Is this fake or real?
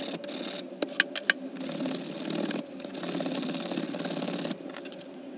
real